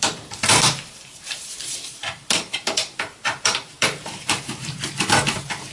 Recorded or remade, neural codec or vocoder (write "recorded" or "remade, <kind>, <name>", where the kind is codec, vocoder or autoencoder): remade, vocoder, BigVGAN v2